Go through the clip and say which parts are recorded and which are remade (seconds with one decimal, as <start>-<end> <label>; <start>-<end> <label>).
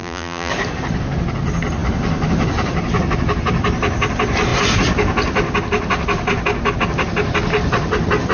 0.0-0.5 remade; 0.5-8.3 recorded